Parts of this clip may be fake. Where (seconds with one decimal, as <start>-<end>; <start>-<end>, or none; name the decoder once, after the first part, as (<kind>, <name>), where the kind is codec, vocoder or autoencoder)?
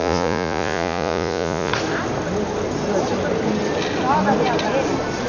0.0-1.7 (vocoder, Vocos)